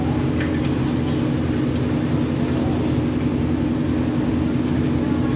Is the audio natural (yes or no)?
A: yes